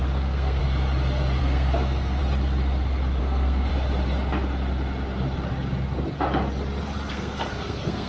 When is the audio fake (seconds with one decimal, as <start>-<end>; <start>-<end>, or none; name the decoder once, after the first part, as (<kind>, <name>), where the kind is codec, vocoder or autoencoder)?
0.0-0.6 (codec, SNAC); 1.4-2.2; 3.2-3.7; 7.1-8.1